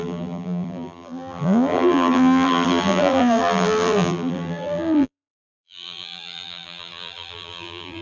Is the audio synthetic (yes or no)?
yes